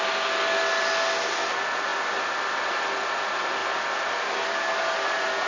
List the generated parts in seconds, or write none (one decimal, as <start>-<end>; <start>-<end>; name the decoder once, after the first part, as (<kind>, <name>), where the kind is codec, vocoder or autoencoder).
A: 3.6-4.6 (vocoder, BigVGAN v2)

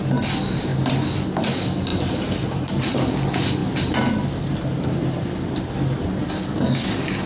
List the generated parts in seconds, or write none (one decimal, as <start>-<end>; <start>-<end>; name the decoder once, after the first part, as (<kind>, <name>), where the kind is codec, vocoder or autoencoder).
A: 1.9-3.1 (vocoder, BigVGAN v2)

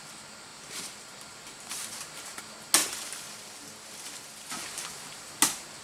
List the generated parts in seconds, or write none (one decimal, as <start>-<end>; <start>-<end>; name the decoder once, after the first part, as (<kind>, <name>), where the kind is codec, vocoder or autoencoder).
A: 0.5-2.4 (vocoder, BigVGAN v2)